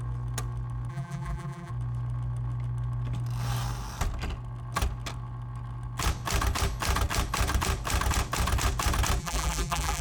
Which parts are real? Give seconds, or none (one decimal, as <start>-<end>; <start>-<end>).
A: 0.0-0.9; 1.7-9.2